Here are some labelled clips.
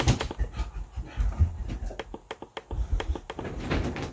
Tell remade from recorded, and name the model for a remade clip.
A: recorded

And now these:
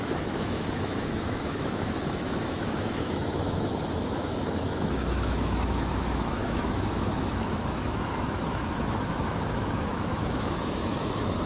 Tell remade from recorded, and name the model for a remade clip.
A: remade, autoencoder, DAC-VAE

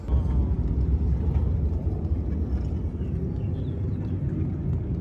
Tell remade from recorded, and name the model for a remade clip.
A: recorded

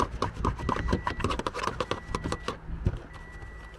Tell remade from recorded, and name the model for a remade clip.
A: recorded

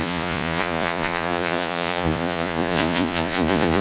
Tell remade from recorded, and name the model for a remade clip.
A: remade, vocoder, Vocos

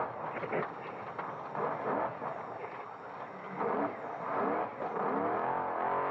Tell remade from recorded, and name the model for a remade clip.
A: recorded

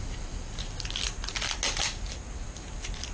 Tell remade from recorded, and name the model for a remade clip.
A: recorded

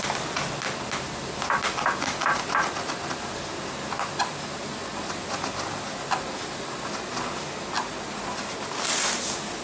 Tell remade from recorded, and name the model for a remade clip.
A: recorded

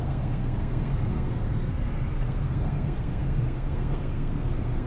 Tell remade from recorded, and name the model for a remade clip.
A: remade, codec, SNAC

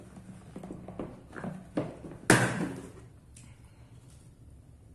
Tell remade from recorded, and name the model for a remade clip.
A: recorded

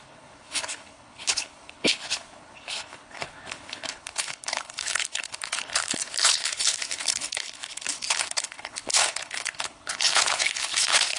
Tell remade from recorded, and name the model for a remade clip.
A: remade, codec, HILCodec